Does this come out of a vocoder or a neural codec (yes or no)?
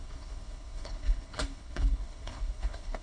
yes